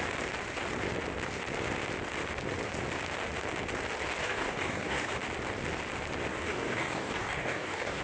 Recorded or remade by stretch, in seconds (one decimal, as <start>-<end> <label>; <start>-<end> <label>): 0.0-4.2 recorded; 4.2-5.1 remade; 5.1-6.3 recorded; 6.3-8.0 remade